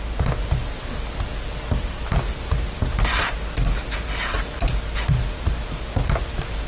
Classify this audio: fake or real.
real